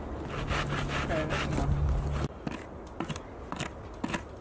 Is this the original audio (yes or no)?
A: yes